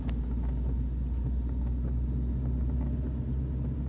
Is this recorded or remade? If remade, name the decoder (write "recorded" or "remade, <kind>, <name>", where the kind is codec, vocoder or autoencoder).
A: recorded